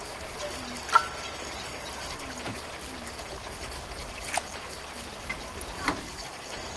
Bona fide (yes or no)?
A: yes